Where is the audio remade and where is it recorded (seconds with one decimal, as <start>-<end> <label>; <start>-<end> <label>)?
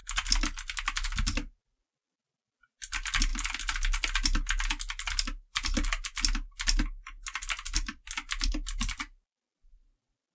0.0-10.3 recorded